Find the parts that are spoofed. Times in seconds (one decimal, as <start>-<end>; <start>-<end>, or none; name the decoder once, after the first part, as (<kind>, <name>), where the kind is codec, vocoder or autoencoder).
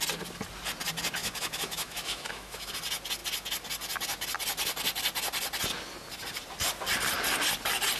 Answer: 1.2-2.7 (autoencoder, DAC-VAE)